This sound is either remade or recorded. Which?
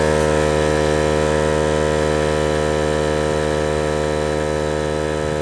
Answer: recorded